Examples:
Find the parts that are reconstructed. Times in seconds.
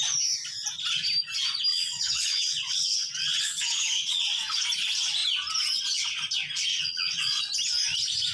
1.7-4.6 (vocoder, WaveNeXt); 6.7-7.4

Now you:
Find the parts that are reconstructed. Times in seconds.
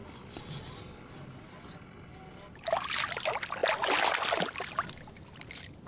none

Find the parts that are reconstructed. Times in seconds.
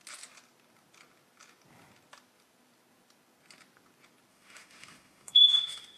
4.3-6.0 (autoencoder, DAC-VAE)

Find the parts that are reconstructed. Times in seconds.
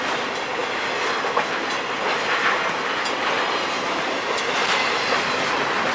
none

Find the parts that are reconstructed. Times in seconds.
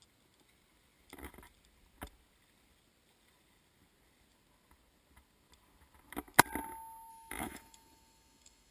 7.1-8.7 (autoencoder, DAC-VAE)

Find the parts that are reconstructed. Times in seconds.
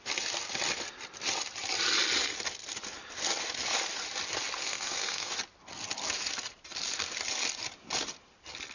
4.6-5.3 (codec, SNAC)